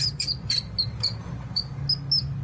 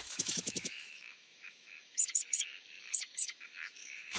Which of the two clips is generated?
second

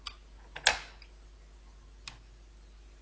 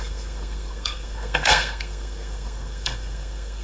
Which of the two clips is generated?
second